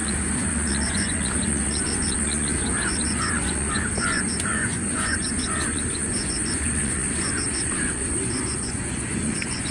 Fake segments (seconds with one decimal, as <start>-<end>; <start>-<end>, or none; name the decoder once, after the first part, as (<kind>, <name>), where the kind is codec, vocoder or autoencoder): 0.0-9.7 (vocoder, Vocos)